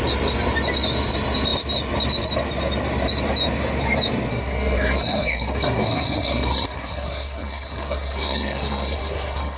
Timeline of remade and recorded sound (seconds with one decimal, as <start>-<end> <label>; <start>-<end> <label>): 0.0-4.3 recorded; 4.3-9.6 remade